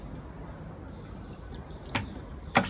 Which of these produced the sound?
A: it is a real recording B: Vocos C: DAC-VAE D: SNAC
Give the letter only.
A